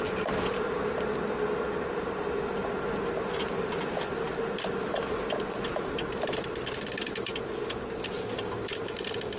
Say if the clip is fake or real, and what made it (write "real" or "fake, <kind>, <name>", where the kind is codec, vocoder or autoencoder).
real